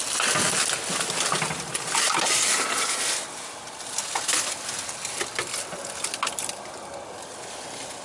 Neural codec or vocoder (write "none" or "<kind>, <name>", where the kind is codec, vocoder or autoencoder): none